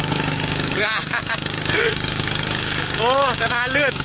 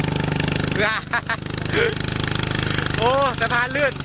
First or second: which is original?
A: second